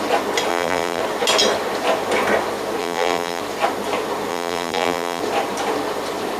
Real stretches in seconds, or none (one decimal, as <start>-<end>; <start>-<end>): 0.0-0.5; 1.0-2.8; 3.4-4.3; 5.2-6.4